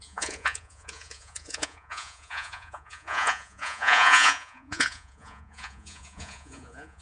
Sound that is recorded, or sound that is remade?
remade